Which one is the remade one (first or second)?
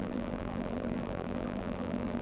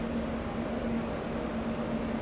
first